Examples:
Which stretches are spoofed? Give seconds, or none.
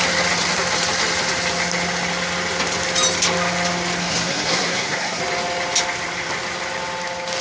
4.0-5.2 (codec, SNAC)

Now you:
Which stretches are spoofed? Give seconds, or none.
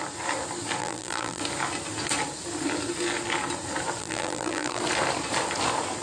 0.8-1.4 (vocoder, BigVGAN v2); 4.0-4.8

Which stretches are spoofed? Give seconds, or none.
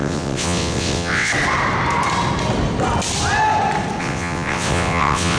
0.0-1.3 (vocoder, WaveNeXt); 4.0-5.4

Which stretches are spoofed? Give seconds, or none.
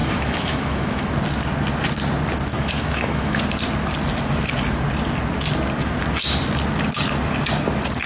0.0-1.1 (autoencoder, DAC-VAE); 2.5-3.4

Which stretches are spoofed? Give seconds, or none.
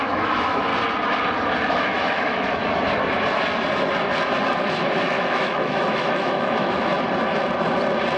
0.0-0.7 (autoencoder, DAC-VAE); 1.7-2.6; 4.6-6.9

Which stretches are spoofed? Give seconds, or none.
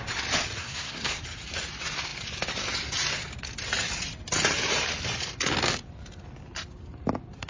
0.6-1.2 (codec, SNAC)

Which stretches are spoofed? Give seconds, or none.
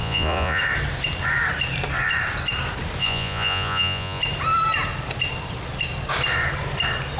0.0-0.6 (vocoder, Vocos); 3.0-4.2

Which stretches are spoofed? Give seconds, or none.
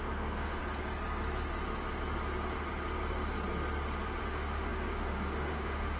0.0-0.6 (autoencoder, DAC-VAE); 4.2-6.0